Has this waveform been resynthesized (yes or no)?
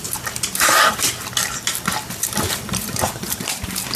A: no